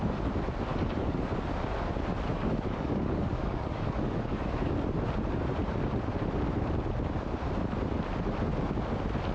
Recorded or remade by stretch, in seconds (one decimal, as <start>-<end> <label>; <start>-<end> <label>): 0.0-0.7 recorded; 0.7-1.3 remade; 1.3-2.3 recorded; 2.3-4.7 remade; 4.7-9.3 recorded